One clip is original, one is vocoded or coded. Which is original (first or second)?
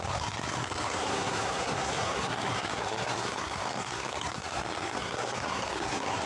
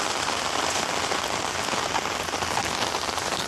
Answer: second